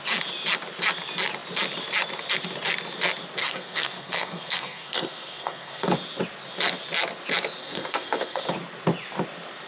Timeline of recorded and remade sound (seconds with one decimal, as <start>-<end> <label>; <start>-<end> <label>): 0.0-3.4 recorded; 3.4-5.9 remade; 5.9-7.6 recorded; 7.6-8.4 remade; 8.4-9.7 recorded